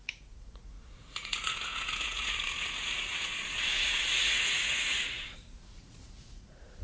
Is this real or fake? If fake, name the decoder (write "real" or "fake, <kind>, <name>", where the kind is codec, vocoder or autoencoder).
fake, vocoder, Vocos